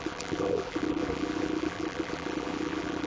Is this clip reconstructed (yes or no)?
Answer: yes